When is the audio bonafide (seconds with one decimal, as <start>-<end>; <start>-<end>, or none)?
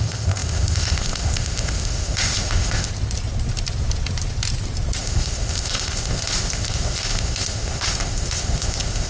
2.9-5.0